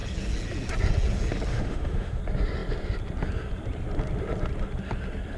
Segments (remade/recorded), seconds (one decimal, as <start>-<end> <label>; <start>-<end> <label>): 0.0-1.5 recorded; 1.5-2.2 remade; 2.2-5.4 recorded